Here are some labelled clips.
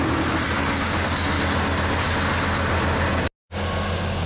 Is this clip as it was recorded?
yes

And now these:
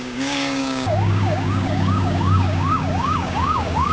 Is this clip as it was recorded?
no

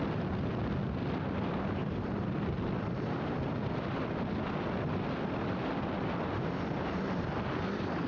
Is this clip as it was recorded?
yes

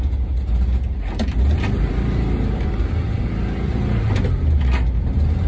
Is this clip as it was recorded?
yes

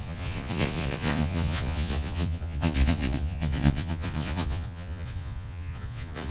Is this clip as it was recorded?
no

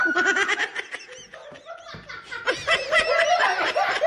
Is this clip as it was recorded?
yes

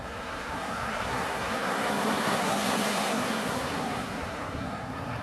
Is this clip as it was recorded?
no